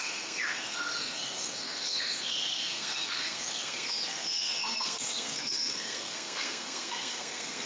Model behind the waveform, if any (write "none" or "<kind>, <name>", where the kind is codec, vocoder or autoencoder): codec, SNAC